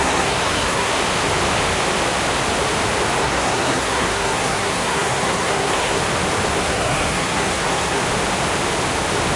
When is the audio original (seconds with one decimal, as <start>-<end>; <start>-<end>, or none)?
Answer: 0.9-3.2; 6.0-6.6; 8.0-9.4